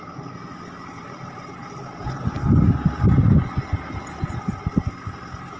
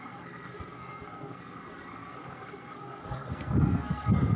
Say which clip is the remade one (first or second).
second